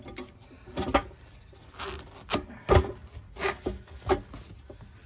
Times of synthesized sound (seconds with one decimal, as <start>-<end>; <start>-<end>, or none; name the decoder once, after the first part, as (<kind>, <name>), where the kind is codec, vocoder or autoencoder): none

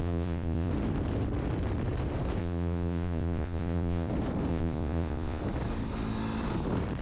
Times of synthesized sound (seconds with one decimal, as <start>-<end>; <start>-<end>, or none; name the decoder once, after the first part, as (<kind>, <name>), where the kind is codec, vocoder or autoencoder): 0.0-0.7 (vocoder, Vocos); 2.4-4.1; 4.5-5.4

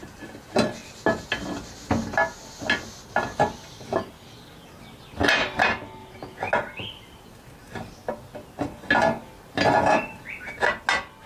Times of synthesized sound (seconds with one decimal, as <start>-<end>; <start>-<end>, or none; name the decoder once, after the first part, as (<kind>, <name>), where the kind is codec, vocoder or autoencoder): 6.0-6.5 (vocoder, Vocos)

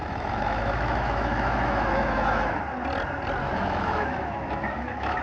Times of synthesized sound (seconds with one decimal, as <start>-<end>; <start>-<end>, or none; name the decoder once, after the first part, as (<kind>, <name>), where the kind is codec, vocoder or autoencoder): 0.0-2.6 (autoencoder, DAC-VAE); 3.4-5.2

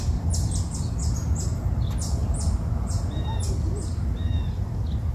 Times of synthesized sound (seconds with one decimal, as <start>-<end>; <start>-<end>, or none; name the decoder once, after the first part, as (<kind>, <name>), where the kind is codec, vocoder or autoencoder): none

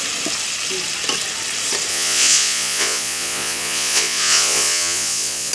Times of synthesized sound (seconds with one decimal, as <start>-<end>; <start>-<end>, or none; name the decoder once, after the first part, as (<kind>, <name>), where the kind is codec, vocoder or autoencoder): 1.9-5.5 (vocoder, Vocos)